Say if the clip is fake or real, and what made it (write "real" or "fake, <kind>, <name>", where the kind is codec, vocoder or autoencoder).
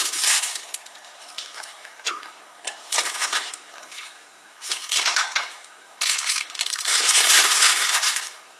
fake, codec, SNAC